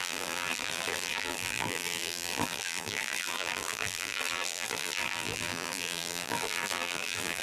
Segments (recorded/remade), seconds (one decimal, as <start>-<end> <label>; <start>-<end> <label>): 0.0-7.4 remade